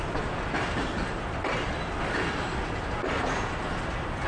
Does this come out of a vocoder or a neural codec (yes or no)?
no